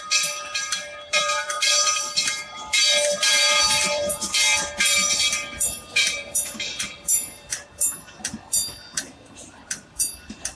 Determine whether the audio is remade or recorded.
remade